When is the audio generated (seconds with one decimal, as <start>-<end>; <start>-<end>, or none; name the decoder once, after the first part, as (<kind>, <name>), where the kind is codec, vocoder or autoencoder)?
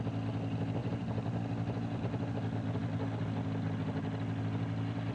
0.8-1.4 (vocoder, BigVGAN v2)